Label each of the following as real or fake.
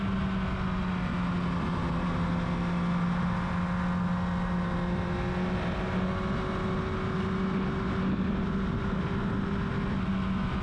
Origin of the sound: real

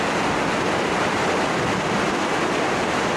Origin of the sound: real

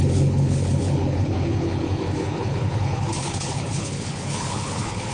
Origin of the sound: fake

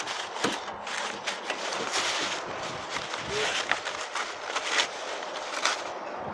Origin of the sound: real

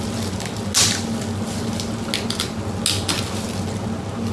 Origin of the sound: real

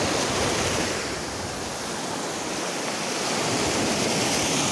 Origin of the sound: real